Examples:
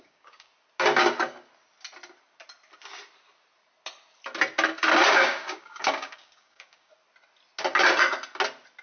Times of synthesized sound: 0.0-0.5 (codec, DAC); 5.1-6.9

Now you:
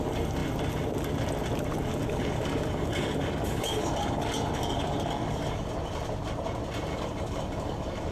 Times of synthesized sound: 1.9-5.7 (codec, DAC); 6.9-8.1

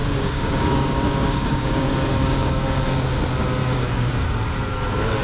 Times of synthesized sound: 0.0-2.7 (codec, DAC); 3.6-4.1

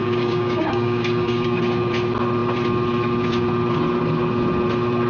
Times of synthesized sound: 0.0-1.6 (codec, DAC)